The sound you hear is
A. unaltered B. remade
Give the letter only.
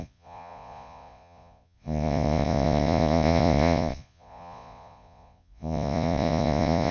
B